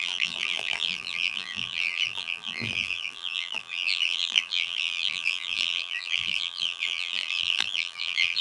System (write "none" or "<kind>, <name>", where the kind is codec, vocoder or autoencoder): vocoder, BigVGAN v2